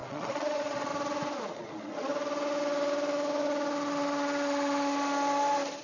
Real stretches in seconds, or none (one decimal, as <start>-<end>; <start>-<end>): 0.9-1.5; 2.1-5.8